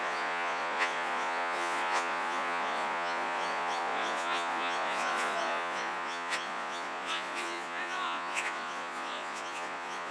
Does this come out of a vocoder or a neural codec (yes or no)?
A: yes